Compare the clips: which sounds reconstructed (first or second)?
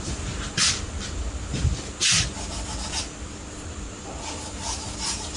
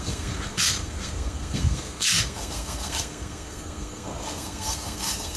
second